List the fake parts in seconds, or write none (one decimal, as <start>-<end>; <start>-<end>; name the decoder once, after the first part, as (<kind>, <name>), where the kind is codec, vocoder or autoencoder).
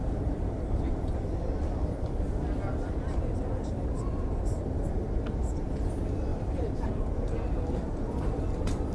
0.0-1.4 (vocoder, BigVGAN v2); 2.7-4.8; 6.3-7.0